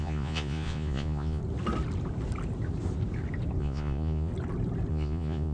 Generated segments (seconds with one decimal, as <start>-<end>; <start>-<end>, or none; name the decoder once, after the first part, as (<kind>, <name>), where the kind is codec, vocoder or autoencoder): 0.0-1.4 (vocoder, Vocos); 3.6-4.3; 4.9-5.5

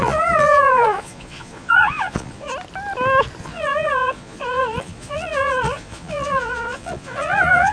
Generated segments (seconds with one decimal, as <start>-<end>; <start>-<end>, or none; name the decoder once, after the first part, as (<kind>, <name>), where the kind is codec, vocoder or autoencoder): 0.0-2.5 (vocoder, Vocos); 3.4-7.7

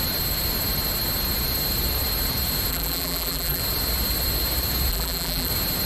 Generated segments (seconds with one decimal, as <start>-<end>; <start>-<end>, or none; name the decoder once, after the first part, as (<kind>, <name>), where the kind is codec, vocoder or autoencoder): 2.7-3.6 (vocoder, BigVGAN v2); 4.9-5.5

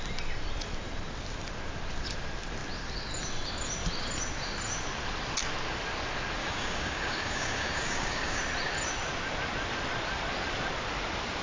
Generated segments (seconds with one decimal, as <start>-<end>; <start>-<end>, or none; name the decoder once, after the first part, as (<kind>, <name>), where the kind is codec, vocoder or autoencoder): 6.4-8.4 (codec, DAC)